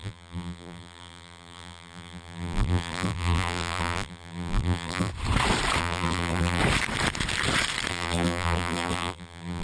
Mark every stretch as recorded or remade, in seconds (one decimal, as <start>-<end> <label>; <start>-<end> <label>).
0.0-5.1 remade; 5.1-5.8 recorded; 5.8-6.6 remade; 6.6-7.9 recorded; 7.9-9.6 remade